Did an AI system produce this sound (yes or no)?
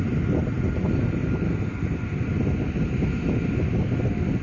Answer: no